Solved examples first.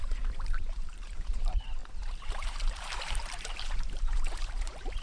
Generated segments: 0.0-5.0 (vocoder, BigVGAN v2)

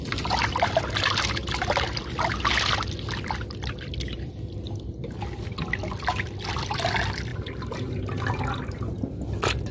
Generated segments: 7.3-8.4 (vocoder, BigVGAN v2)

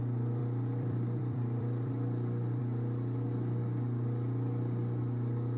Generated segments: 0.4-2.6 (vocoder, BigVGAN v2)

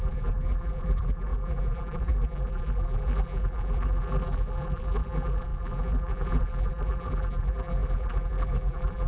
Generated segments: 0.0-9.1 (vocoder, BigVGAN v2)

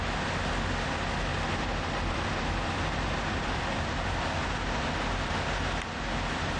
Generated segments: 1.3-5.3 (vocoder, BigVGAN v2)

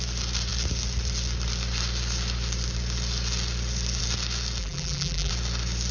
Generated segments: 4.6-5.3 (vocoder, BigVGAN v2)

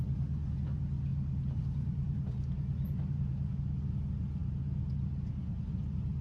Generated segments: 1.1-3.5 (vocoder, BigVGAN v2)

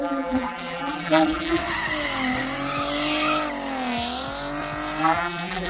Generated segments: 0.0-1.6 (vocoder, BigVGAN v2); 5.0-5.7